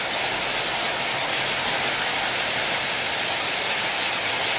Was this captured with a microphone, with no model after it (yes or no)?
yes